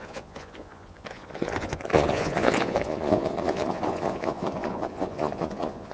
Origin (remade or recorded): remade